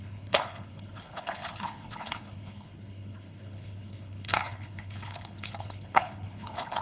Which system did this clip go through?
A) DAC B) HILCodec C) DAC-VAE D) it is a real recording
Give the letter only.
B